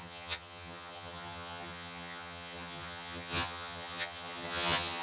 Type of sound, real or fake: fake